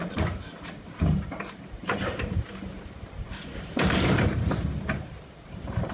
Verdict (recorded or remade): remade